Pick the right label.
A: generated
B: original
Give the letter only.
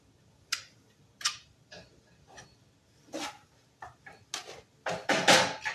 B